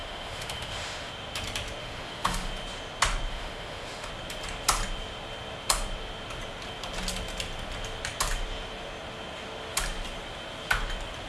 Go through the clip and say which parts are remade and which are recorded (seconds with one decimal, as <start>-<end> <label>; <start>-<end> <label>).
0.0-1.1 remade; 1.1-1.8 recorded; 1.8-2.5 remade; 2.5-3.3 recorded; 3.3-4.1 remade; 4.1-11.3 recorded